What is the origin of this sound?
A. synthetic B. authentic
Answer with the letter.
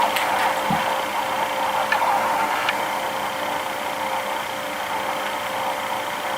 B